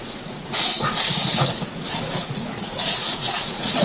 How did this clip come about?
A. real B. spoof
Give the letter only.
B